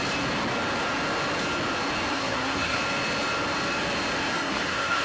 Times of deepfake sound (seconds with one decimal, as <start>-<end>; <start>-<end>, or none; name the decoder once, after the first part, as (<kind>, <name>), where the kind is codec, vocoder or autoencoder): 2.1-2.8 (codec, SNAC); 4.3-5.0